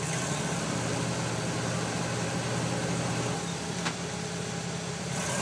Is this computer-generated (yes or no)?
no